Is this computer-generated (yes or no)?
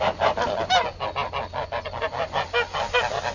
no